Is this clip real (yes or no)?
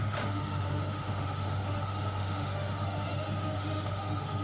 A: no